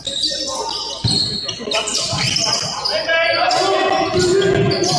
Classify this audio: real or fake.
real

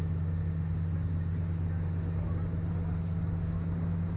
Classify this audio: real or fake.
real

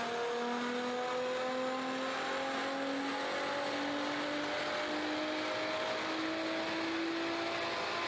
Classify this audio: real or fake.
real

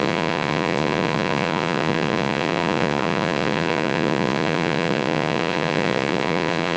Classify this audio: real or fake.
fake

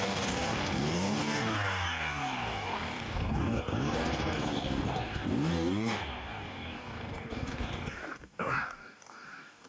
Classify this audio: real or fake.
fake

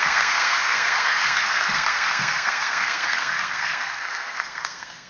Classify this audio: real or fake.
fake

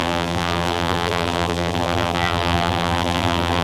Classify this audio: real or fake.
fake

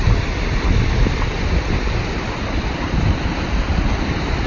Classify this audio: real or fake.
real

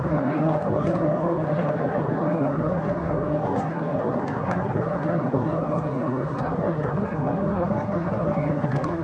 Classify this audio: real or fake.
fake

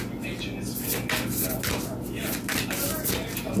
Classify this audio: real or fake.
real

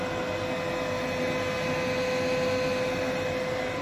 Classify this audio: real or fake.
real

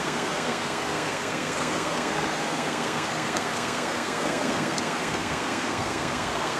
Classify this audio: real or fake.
fake